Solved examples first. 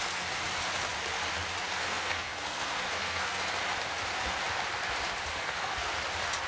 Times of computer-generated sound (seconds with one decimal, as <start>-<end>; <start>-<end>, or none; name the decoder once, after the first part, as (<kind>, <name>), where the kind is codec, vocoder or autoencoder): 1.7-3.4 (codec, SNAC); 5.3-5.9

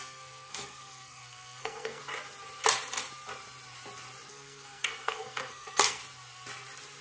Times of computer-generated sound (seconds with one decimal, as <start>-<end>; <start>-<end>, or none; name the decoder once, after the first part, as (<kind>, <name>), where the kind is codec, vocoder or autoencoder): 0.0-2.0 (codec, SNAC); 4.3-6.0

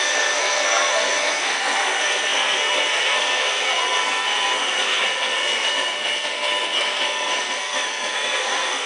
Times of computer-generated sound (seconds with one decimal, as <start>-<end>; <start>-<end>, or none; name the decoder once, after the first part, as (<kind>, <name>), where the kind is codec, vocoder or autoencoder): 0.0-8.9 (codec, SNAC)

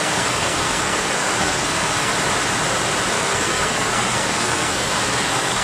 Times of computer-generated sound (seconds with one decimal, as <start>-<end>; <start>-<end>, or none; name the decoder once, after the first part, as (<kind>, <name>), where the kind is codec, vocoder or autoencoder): 0.0-2.1 (codec, SNAC); 3.1-5.6

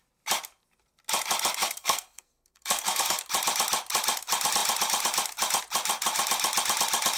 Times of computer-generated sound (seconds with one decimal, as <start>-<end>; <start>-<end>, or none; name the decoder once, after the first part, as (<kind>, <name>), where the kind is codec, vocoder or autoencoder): 1.6-3.2 (codec, SNAC)

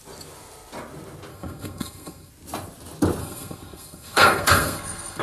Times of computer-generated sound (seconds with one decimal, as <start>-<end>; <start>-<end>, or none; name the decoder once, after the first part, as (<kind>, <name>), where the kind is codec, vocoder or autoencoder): 1.3-2.3 (codec, SNAC); 3.2-5.2

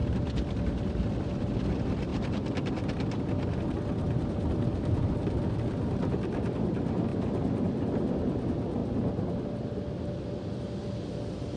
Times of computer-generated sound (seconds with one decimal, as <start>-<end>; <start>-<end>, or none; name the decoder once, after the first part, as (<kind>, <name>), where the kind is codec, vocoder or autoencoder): none

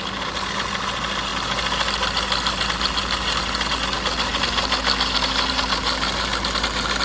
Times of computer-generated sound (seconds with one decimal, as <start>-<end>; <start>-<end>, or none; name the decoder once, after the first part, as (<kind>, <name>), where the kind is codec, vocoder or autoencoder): none